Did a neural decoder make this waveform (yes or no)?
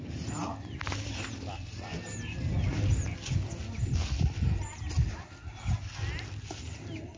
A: no